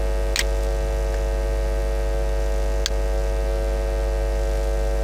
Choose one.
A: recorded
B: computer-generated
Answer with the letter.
A